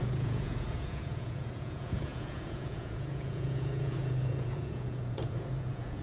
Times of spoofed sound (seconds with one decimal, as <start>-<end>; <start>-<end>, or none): 0.0-6.0